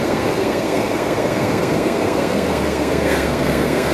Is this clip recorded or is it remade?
remade